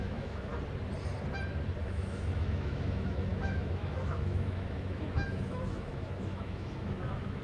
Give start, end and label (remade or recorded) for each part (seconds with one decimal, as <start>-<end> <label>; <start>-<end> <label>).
0.0-0.5 remade; 0.5-1.8 recorded; 1.8-7.4 remade